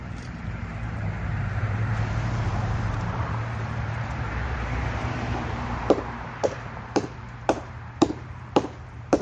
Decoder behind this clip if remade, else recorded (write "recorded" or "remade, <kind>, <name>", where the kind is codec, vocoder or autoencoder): remade, vocoder, BigVGAN v2